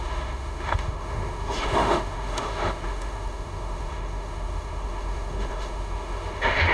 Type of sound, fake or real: fake